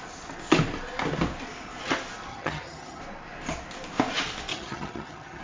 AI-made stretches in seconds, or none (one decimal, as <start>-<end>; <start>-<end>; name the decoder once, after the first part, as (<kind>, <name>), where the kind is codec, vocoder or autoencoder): 2.3-3.0 (vocoder, HiFi-GAN); 4.5-5.4